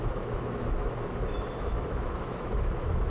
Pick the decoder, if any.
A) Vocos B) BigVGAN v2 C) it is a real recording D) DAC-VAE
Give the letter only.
D